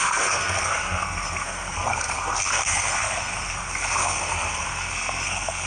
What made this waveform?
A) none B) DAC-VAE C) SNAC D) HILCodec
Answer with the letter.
C